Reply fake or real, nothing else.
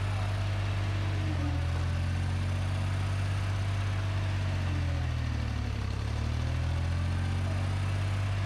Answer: real